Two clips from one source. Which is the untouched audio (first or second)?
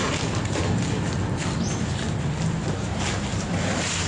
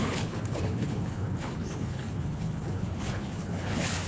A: first